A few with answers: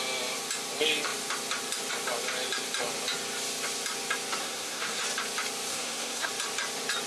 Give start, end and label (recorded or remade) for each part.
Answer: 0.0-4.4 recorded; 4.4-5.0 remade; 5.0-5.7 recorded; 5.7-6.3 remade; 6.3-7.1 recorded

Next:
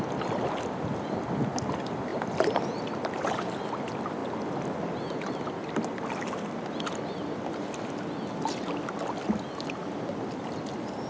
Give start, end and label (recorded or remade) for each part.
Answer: 0.0-11.1 recorded

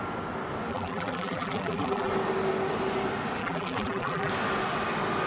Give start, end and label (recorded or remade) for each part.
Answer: 0.0-0.7 recorded; 0.7-2.1 remade; 2.1-3.4 recorded; 3.4-4.3 remade; 4.3-5.3 recorded

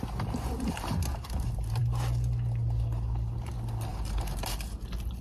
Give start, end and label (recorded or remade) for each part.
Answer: 0.0-5.2 recorded

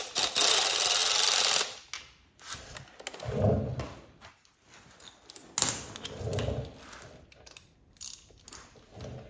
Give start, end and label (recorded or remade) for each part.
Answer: 0.0-9.3 recorded

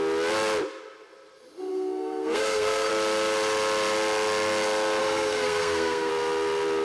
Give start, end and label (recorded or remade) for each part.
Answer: 0.0-1.7 recorded; 1.7-2.9 remade; 2.9-5.0 recorded; 5.0-6.1 remade; 6.1-6.8 recorded

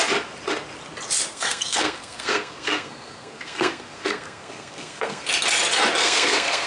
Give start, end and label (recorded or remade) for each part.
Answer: 0.0-1.3 recorded; 1.3-5.3 remade; 5.3-6.0 recorded; 6.0-6.7 remade

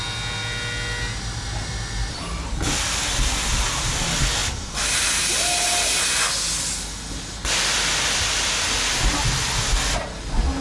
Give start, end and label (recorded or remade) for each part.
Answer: 0.0-10.6 recorded